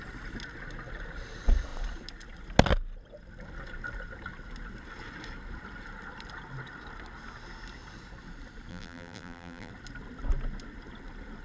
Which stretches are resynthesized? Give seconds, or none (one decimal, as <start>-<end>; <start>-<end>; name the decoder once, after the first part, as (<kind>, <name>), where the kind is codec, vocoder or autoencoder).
8.7-9.7 (vocoder, BigVGAN v2)